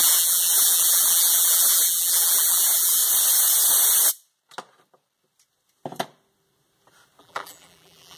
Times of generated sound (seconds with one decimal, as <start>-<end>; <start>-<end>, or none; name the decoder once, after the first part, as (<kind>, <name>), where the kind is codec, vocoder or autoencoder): 0.0-3.0 (vocoder, BigVGAN v2); 7.2-8.2